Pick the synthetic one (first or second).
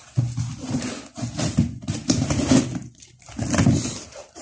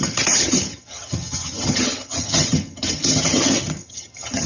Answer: second